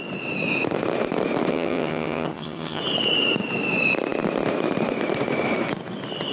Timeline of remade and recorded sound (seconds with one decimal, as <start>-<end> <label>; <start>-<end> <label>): 0.0-1.5 recorded; 1.5-2.8 remade; 2.8-6.3 recorded